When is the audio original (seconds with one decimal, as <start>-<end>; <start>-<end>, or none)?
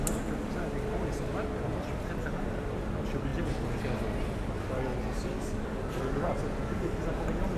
0.0-7.6